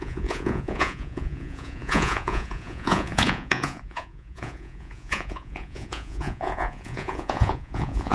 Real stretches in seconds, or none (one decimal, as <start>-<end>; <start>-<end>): none